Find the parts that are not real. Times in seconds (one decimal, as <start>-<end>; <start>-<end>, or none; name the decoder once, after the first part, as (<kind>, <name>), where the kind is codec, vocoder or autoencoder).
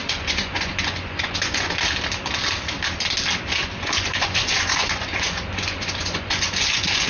0.0-1.7 (vocoder, Vocos); 3.6-7.1